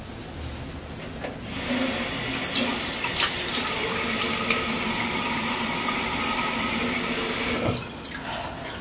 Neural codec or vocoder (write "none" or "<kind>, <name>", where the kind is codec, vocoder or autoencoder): none